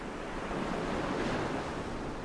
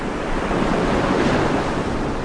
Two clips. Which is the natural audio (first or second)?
first